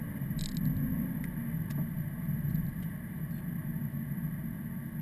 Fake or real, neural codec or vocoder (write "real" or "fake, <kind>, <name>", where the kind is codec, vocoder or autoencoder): real